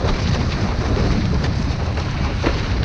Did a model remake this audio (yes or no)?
yes